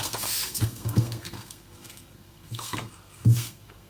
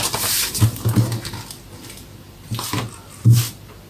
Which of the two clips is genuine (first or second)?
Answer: second